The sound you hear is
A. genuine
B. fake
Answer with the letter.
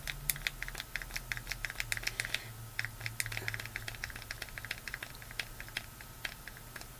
A